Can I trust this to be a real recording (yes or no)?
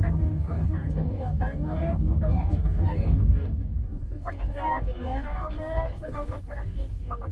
no